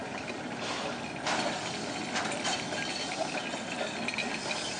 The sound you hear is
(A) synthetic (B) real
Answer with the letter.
B